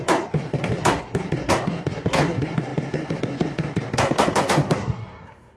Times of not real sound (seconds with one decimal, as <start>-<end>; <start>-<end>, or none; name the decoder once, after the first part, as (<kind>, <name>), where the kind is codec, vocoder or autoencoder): 0.0-5.6 (codec, SNAC)

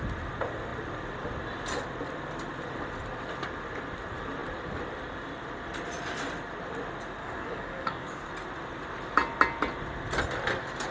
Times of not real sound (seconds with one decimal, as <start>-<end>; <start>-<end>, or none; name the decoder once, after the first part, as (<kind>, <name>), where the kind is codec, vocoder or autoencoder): 7.2-8.3 (codec, DAC)